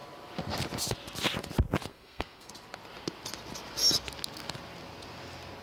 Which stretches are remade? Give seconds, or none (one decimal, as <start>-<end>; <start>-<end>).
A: 1.9-2.5